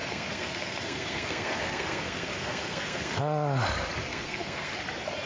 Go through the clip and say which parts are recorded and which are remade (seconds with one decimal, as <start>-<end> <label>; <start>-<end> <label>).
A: 0.0-3.2 remade; 3.2-4.1 recorded; 4.1-4.7 remade; 4.7-5.3 recorded

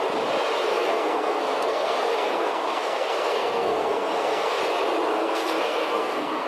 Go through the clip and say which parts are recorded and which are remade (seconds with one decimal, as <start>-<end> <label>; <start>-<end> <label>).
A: 0.0-0.7 recorded; 0.7-4.6 remade; 4.6-5.1 recorded; 5.1-6.5 remade

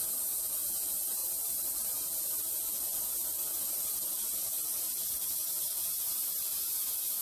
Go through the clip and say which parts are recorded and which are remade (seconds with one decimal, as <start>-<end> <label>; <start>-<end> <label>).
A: 0.0-1.2 recorded; 1.2-1.7 remade; 1.7-5.8 recorded; 5.8-6.6 remade; 6.6-7.2 recorded

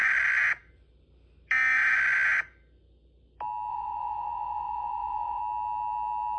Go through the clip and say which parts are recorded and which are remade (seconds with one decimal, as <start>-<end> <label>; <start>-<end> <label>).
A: 0.0-3.7 recorded; 3.7-5.4 remade; 5.4-6.4 recorded

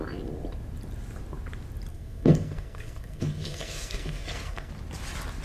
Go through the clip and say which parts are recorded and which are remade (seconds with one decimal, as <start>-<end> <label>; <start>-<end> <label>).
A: 0.0-1.9 recorded; 1.9-4.7 remade; 4.7-5.4 recorded

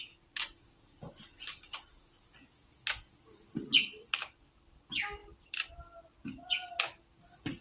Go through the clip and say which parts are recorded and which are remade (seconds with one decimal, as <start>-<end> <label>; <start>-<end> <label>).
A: 0.0-7.6 recorded

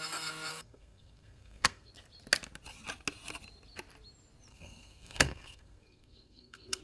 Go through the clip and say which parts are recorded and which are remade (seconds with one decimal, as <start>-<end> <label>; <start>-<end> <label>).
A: 0.0-0.5 recorded; 0.5-1.9 remade; 1.9-4.5 recorded; 4.5-6.8 remade

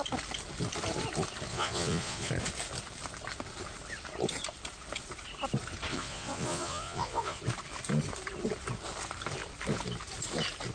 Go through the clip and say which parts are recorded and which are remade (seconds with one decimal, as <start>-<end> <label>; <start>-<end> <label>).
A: 0.0-1.5 recorded; 1.5-2.3 remade; 2.3-5.9 recorded; 5.9-7.4 remade; 7.4-10.7 recorded